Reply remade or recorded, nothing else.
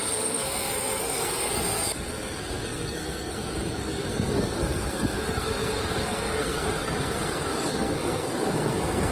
remade